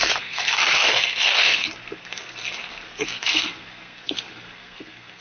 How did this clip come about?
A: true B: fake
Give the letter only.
B